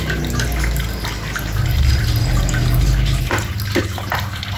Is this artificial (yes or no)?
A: no